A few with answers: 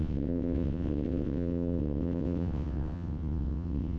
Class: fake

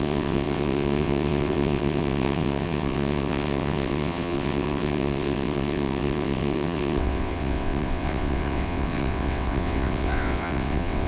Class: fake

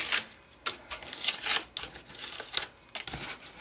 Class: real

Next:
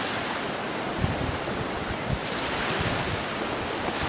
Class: real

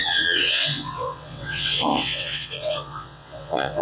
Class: fake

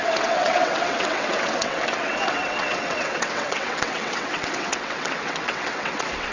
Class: fake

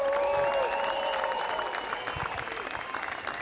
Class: real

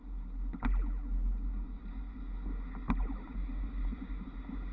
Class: real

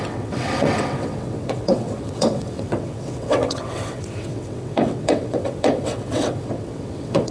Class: fake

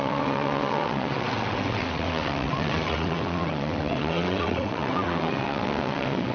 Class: fake